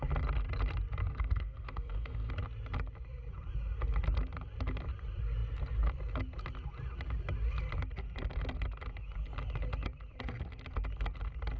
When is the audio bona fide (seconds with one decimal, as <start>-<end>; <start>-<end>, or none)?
0.0-1.0; 2.3-11.6